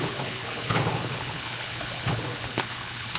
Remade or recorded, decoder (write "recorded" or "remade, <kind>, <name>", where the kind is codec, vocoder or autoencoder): remade, codec, HILCodec